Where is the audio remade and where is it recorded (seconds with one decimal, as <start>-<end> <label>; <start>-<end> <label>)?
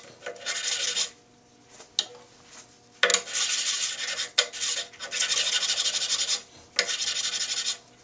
0.0-8.0 recorded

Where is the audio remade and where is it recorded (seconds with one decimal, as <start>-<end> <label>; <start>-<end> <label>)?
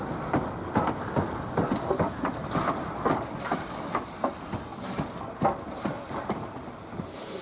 0.0-7.4 recorded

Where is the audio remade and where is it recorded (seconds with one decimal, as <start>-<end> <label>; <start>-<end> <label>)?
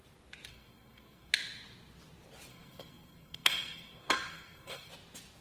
0.0-0.5 recorded; 0.5-1.3 remade; 1.3-2.5 recorded; 2.5-4.9 remade; 4.9-5.4 recorded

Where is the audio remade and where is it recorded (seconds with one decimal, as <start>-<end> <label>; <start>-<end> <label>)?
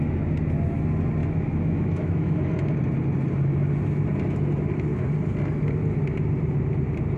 0.0-1.2 recorded; 1.2-2.5 remade; 2.5-7.2 recorded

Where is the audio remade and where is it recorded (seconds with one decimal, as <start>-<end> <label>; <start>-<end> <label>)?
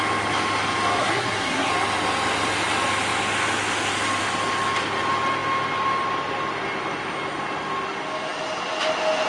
0.0-1.0 recorded; 1.0-1.7 remade; 1.7-9.3 recorded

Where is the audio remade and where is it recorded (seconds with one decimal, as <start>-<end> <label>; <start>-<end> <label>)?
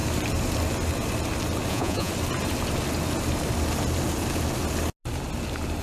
0.0-1.7 recorded; 1.7-2.1 remade; 2.1-5.8 recorded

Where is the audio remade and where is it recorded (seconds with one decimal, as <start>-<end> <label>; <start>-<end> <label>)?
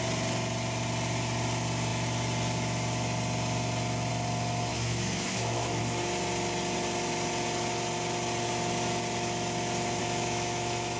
0.0-4.7 recorded; 4.7-5.8 remade; 5.8-10.0 recorded; 10.0-11.0 remade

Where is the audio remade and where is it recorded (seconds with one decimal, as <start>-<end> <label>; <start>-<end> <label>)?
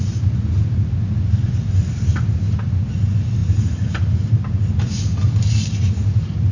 0.0-3.4 recorded; 3.4-3.9 remade; 3.9-6.5 recorded